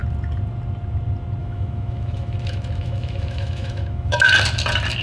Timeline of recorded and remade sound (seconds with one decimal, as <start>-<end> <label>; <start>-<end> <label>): 0.0-1.4 recorded; 1.4-4.3 remade; 4.3-5.0 recorded